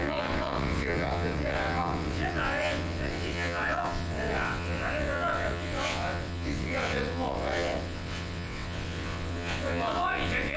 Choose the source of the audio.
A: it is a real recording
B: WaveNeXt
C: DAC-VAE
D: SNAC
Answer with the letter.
B